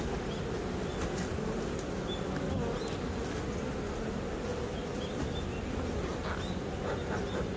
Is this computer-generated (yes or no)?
no